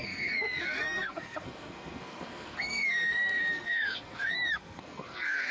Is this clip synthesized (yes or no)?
yes